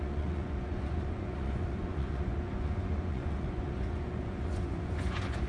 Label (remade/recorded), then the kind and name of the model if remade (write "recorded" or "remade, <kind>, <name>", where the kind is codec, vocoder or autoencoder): remade, vocoder, Vocos